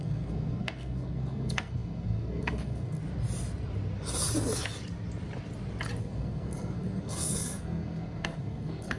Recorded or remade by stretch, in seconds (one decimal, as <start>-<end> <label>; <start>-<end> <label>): 0.0-3.0 remade; 3.0-6.0 recorded; 6.0-9.0 remade